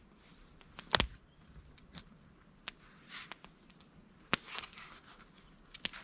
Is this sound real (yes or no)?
yes